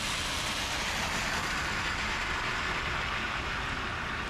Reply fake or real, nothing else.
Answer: real